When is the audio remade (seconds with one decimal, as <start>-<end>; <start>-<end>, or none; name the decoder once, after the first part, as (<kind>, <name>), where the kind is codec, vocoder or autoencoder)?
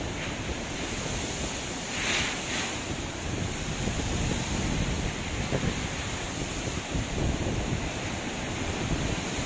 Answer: 6.4-8.0 (vocoder, BigVGAN v2)